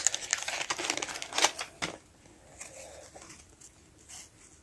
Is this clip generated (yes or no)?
no